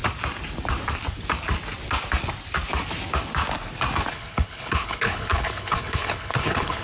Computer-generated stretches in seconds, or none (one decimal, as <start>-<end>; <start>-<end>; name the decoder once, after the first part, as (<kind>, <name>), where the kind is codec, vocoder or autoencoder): 4.1-6.8 (codec, HILCodec)